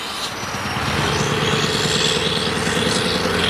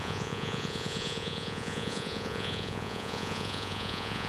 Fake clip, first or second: second